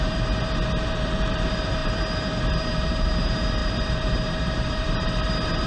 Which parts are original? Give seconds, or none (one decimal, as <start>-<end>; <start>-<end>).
none